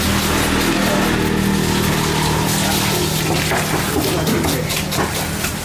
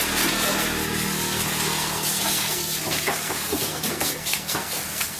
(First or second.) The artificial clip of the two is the second